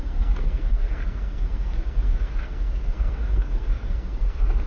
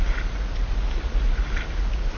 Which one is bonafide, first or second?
second